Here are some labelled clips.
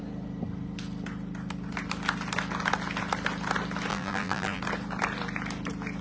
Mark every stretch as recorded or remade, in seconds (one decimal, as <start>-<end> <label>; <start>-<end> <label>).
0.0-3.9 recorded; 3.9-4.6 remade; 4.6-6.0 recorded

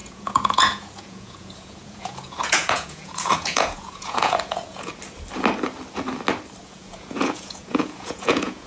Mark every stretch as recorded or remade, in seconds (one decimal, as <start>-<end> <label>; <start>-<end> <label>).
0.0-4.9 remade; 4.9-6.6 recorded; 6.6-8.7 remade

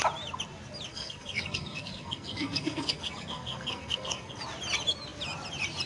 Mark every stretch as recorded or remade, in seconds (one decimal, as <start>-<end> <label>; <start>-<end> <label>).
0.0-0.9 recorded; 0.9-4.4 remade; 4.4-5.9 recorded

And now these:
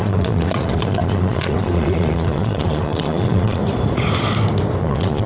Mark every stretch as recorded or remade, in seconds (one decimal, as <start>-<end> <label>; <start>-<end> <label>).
0.0-3.6 remade; 3.6-4.8 recorded; 4.8-5.3 remade